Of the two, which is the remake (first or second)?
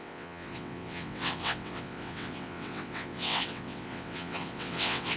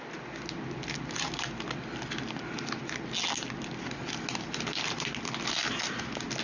first